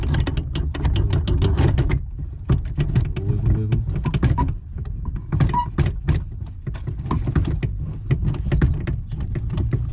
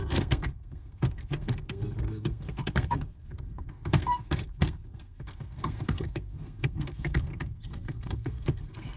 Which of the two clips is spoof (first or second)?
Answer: second